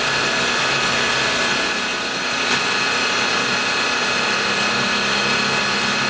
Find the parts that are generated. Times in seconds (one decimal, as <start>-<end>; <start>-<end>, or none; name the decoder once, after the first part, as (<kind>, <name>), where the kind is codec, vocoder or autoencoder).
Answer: none